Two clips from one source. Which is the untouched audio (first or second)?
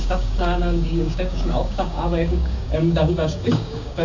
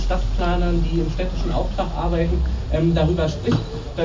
second